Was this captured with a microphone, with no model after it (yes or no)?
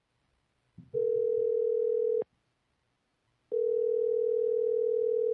yes